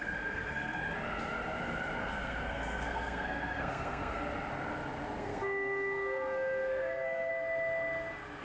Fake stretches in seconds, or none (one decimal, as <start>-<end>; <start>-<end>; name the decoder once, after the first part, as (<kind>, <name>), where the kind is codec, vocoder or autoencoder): 0.0-0.8 (codec, SNAC); 2.0-4.2; 5.2-7.3